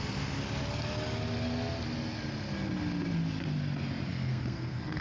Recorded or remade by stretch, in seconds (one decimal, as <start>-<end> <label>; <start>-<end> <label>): 0.0-4.1 recorded; 4.1-5.0 remade